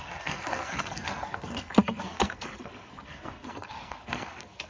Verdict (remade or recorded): remade